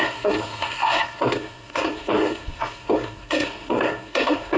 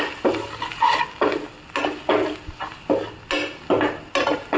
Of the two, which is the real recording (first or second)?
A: second